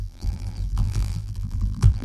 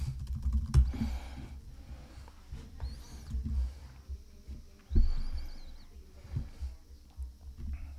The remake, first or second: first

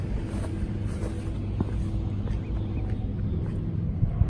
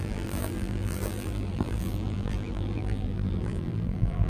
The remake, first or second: second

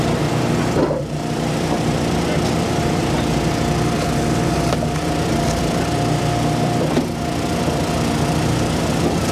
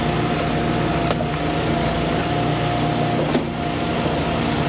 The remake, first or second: first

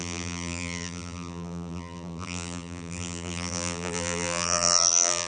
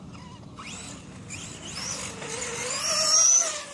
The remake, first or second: first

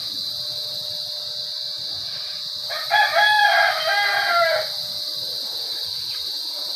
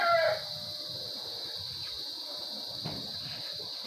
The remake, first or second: second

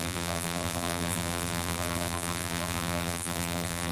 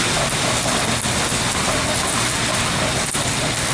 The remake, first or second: first